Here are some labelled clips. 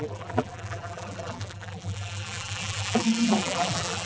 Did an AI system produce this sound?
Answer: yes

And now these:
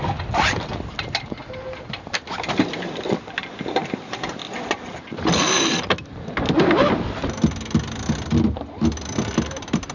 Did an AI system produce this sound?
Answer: no